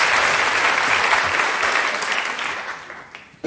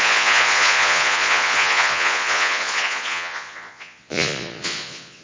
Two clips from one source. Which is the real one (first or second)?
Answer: first